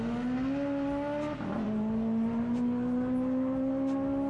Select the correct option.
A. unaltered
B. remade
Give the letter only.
A